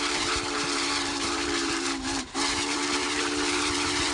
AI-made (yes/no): yes